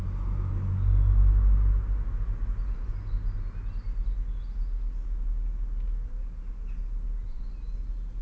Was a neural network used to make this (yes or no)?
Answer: no